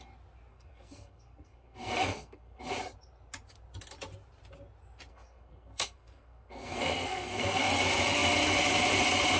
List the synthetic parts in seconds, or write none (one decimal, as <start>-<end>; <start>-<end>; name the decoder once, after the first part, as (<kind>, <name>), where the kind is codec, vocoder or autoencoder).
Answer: 0.5-2.6 (codec, SNAC); 5.1-7.6